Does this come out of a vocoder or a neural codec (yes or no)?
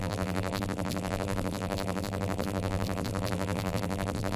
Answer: yes